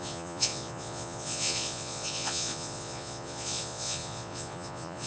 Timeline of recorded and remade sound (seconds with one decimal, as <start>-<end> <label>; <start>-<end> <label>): 0.0-5.1 remade